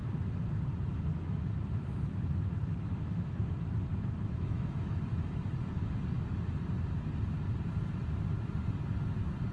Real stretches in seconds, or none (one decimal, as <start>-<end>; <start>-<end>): 0.0-1.1; 5.3-9.5